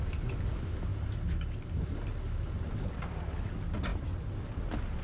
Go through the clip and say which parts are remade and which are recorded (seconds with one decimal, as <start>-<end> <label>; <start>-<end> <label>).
0.0-5.0 recorded